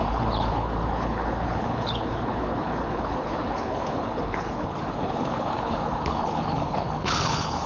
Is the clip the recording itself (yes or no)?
no